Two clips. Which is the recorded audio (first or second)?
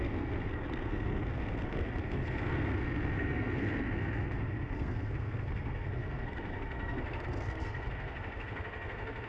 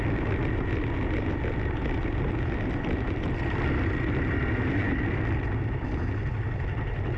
second